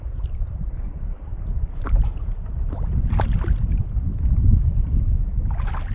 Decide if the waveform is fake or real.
real